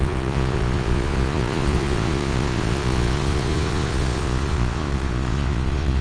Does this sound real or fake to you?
fake